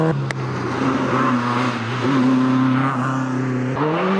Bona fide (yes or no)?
yes